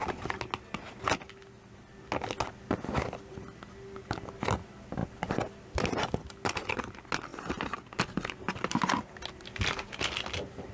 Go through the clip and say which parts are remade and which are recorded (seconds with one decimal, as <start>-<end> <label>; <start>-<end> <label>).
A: 0.0-10.7 recorded